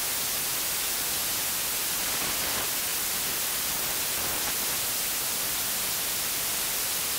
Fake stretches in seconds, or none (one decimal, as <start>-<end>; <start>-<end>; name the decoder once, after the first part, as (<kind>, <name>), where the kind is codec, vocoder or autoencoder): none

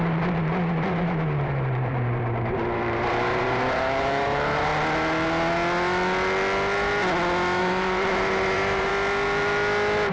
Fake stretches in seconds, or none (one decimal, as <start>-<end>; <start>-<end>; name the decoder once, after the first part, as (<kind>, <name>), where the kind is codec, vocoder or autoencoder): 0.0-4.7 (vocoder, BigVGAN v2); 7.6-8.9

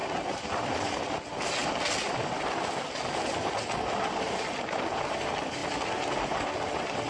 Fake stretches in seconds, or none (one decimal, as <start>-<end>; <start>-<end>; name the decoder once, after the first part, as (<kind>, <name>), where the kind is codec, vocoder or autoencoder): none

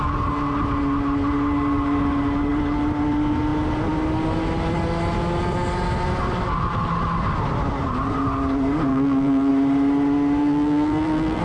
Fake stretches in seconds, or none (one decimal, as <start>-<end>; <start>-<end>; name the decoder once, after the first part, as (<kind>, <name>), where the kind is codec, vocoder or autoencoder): 8.9-9.5 (vocoder, BigVGAN v2); 10.4-11.4

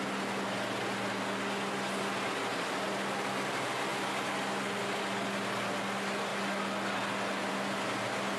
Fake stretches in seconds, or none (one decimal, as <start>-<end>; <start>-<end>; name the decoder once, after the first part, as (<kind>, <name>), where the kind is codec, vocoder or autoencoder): none

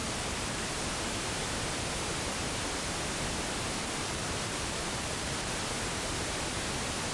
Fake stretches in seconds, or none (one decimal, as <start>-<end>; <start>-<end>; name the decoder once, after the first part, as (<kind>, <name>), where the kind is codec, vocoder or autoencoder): 0.0-0.9 (vocoder, BigVGAN v2); 3.8-5.5